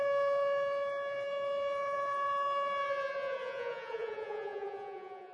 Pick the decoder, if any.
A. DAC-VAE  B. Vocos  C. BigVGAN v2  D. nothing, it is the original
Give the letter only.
B